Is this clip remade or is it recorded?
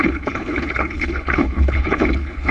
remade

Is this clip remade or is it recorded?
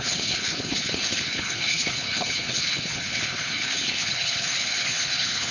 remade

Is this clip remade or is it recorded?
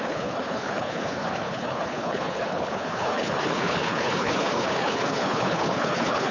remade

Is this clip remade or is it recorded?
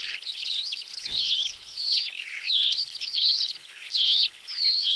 remade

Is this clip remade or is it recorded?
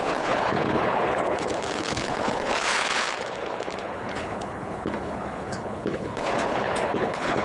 remade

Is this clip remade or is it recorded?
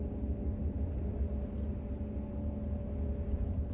recorded